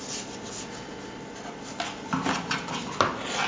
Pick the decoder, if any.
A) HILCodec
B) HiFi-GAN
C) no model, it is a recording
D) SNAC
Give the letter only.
C